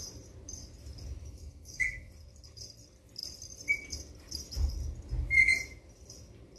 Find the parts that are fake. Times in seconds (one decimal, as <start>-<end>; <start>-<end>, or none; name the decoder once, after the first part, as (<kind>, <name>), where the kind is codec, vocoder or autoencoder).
1.2-2.1 (autoencoder, DAC-VAE)